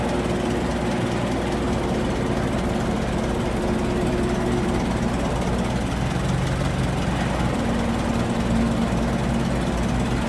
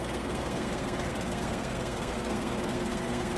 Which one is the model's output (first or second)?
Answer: second